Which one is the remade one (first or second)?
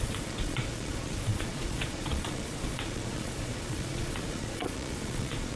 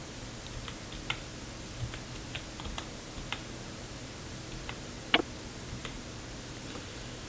first